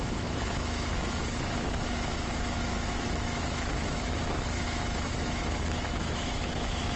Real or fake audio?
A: fake